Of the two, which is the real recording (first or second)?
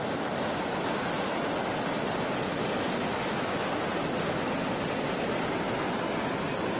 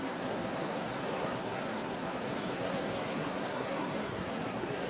first